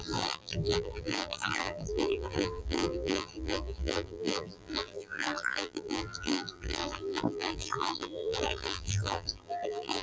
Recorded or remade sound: remade